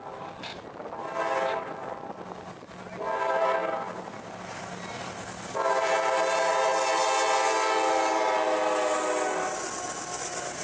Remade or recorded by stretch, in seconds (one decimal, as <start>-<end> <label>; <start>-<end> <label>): 0.0-10.6 recorded